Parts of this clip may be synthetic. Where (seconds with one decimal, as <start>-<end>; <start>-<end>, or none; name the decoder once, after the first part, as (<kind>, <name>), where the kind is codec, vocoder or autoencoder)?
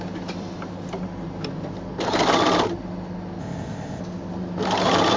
3.4-4.0 (codec, ZipCodec)